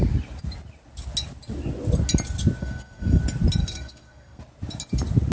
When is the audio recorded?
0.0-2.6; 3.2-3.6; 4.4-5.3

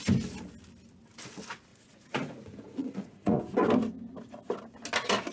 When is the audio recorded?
0.0-1.7; 3.4-5.3

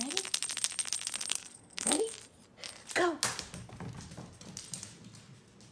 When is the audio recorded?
0.0-1.3; 2.0-5.7

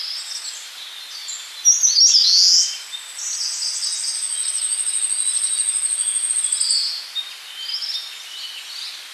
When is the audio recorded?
0.0-9.1

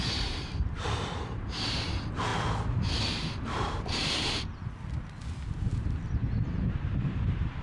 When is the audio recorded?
2.3-3.1; 4.6-5.2

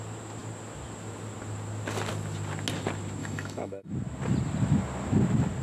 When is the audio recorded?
0.0-3.2; 3.9-5.6

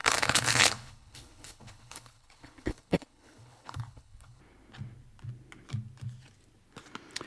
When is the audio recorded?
4.4-7.3